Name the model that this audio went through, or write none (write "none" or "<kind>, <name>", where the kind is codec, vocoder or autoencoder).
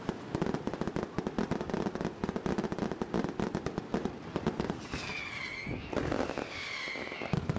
none